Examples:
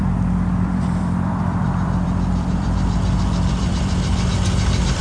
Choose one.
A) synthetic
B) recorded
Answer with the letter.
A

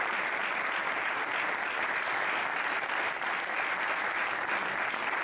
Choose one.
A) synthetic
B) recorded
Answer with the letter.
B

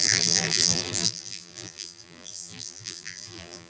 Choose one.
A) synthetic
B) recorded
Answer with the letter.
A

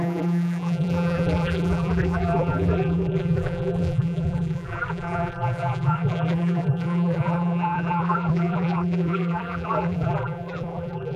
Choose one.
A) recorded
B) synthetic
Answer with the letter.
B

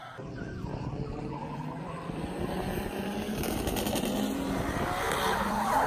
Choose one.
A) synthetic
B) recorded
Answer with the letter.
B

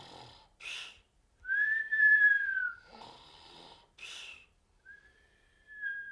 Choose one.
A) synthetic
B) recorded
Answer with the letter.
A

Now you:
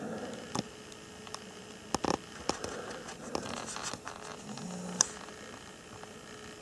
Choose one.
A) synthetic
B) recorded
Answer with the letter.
B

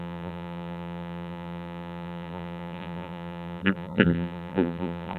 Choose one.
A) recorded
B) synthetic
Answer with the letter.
B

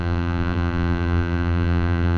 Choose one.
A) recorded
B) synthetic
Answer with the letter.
B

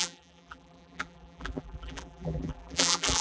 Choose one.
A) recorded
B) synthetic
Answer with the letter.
B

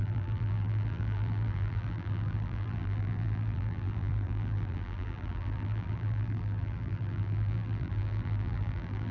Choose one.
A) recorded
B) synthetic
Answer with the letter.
B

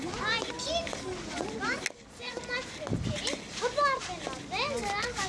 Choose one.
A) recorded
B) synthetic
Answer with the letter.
A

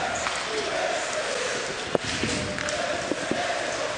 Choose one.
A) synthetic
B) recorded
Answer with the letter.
B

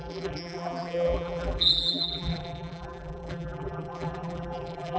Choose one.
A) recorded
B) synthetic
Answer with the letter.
B